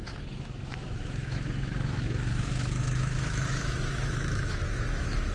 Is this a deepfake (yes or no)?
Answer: yes